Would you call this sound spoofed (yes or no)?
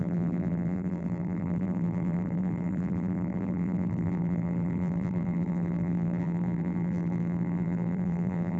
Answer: yes